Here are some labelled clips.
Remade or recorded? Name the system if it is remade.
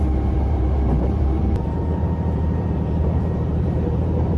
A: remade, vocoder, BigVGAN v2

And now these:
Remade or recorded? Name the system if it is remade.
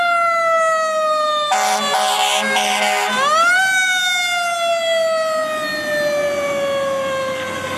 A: recorded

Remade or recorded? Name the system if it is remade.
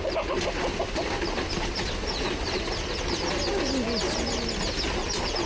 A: recorded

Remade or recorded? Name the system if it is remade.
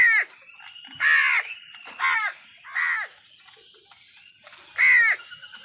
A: recorded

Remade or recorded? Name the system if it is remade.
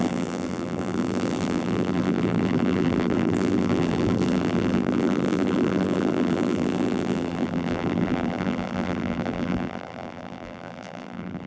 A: remade, vocoder, BigVGAN v2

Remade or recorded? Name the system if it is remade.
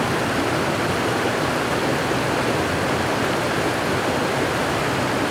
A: recorded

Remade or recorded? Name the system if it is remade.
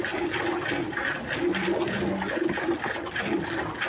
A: recorded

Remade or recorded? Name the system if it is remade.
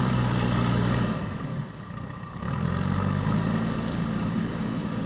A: remade, codec, DAC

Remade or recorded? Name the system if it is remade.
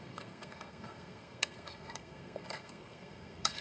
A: remade, codec, SNAC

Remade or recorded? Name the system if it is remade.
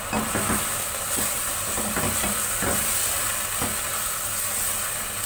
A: recorded